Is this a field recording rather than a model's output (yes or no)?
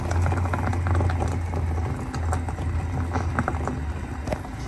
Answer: yes